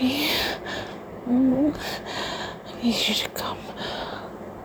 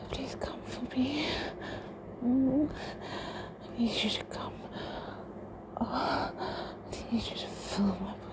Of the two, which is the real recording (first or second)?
second